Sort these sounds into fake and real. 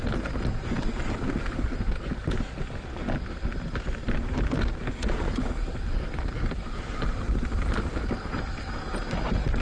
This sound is real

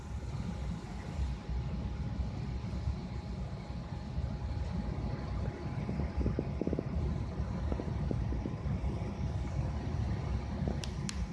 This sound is real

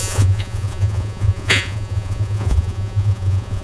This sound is fake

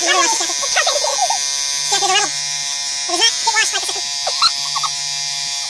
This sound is real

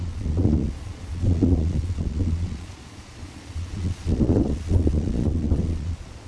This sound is fake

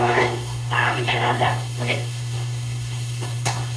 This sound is fake